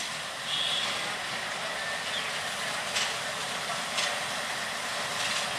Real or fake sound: fake